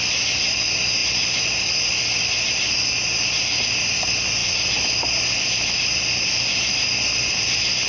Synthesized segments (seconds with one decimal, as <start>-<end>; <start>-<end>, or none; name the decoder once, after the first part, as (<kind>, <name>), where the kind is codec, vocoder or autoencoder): none